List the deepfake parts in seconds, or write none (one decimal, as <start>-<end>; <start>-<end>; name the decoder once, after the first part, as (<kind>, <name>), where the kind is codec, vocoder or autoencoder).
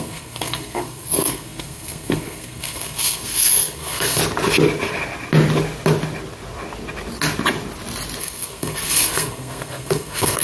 0.0-4.2 (codec, SNAC); 8.2-10.4